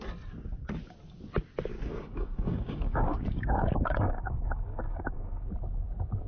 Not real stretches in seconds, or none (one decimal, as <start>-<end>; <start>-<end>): 1.7-5.5